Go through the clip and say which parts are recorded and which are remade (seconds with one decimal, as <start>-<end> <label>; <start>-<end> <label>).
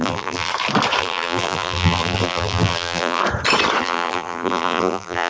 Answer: 0.0-0.5 remade; 0.5-1.0 recorded; 1.0-3.2 remade; 3.2-3.8 recorded; 3.8-5.3 remade